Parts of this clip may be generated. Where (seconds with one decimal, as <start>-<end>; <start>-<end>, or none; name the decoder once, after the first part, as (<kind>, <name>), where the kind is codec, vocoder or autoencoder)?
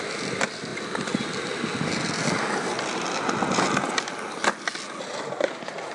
none